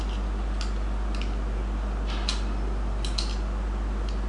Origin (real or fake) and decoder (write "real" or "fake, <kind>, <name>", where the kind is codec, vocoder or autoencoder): real